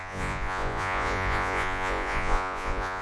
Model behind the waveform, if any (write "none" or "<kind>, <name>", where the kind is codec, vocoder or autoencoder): vocoder, Vocos